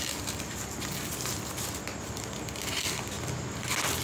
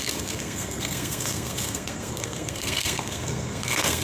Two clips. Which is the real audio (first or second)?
first